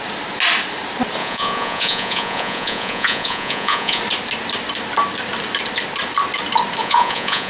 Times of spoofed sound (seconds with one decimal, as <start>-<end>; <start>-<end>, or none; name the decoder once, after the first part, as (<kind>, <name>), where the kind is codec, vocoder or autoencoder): 1.2-4.0 (vocoder, Vocos); 6.8-7.5